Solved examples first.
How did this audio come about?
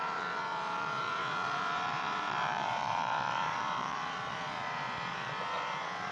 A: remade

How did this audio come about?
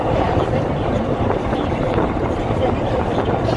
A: recorded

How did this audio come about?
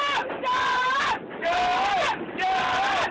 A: recorded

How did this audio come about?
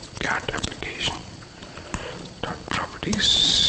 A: remade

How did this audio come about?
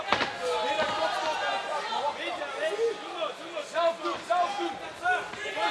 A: recorded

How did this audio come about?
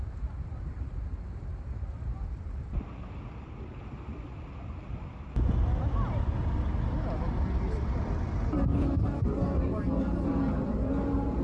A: recorded